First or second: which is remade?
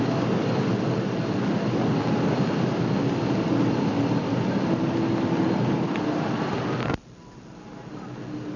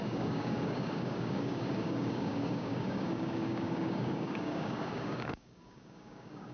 second